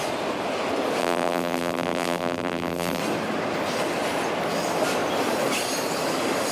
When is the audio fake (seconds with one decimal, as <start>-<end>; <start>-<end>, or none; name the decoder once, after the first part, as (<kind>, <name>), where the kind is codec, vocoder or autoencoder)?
1.0-3.0 (vocoder, BigVGAN v2)

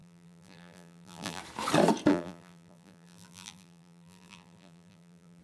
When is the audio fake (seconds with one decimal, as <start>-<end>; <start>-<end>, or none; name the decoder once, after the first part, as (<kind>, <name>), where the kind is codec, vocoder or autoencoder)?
0.0-1.4 (vocoder, BigVGAN v2); 2.1-5.4

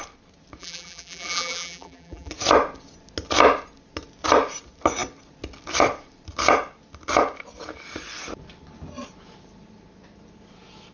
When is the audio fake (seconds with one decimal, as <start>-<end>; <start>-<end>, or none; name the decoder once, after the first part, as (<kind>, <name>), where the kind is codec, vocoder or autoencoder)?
0.6-2.3 (vocoder, BigVGAN v2)

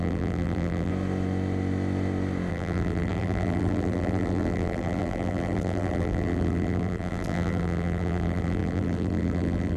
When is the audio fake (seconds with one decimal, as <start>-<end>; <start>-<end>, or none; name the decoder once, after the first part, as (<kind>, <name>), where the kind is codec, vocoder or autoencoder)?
0.0-0.9 (vocoder, BigVGAN v2); 2.5-9.8

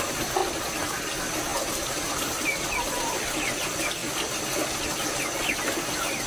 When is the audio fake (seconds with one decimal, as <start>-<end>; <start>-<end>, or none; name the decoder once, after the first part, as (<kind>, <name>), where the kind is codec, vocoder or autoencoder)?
none

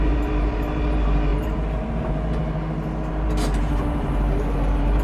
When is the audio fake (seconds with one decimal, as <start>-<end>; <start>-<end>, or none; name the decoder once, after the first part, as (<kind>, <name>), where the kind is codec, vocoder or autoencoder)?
0.0-2.4 (vocoder, BigVGAN v2); 3.1-5.0